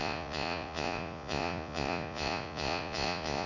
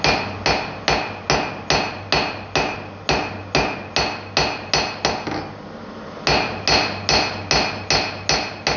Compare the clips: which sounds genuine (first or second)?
second